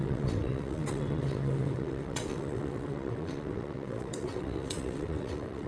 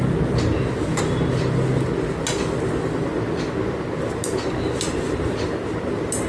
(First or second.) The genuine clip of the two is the second